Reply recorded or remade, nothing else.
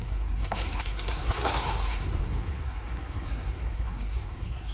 remade